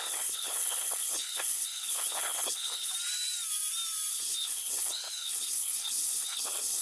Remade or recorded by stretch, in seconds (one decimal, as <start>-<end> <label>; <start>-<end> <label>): 0.0-2.9 remade; 2.9-4.1 recorded; 4.1-6.8 remade